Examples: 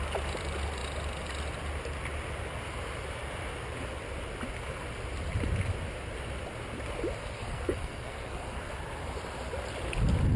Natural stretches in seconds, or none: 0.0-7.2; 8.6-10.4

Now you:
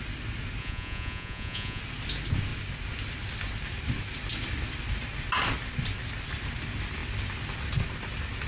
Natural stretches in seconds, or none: 0.0-0.6; 1.8-8.5

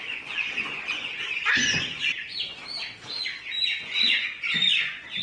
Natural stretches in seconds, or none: 2.6-3.8

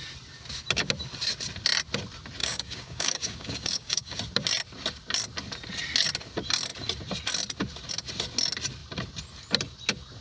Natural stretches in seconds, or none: 0.0-2.4; 4.2-10.2